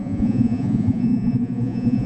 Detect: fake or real fake